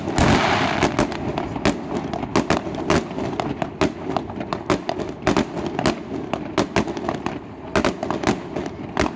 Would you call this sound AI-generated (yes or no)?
no